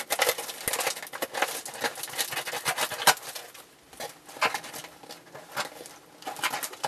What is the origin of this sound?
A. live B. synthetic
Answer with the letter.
A